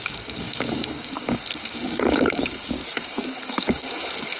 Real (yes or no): no